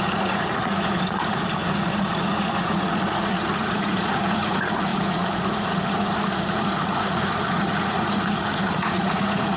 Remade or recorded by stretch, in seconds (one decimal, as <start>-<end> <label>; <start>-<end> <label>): 0.0-9.6 remade